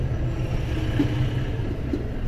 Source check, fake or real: real